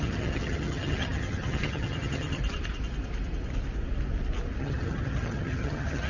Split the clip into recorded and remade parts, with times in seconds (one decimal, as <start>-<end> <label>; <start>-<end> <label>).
0.0-2.4 remade; 2.4-4.6 recorded; 4.6-6.1 remade